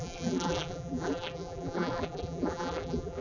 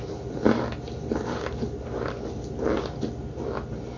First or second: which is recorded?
second